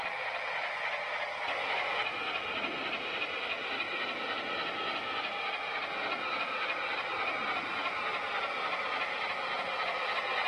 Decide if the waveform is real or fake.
real